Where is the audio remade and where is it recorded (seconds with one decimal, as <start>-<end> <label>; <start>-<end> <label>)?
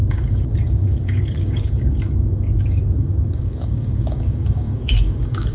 0.0-5.5 remade